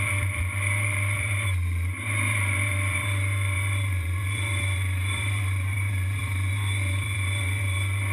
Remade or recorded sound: remade